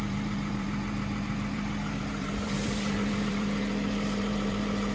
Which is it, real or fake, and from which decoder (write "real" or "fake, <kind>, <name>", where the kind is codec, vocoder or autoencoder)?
fake, vocoder, BigVGAN v2